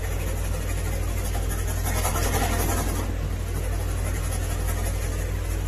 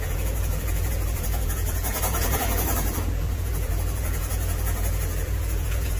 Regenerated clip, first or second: second